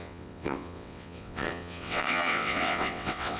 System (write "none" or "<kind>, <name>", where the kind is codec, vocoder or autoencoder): vocoder, WaveNeXt